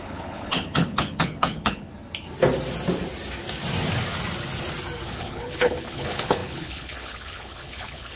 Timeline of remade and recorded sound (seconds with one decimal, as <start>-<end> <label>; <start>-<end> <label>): 0.0-1.9 remade; 1.9-5.1 recorded; 5.1-8.2 remade